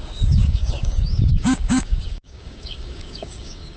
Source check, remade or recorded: remade